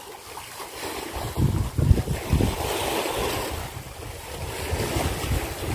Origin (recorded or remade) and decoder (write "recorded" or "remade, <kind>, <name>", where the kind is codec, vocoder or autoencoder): recorded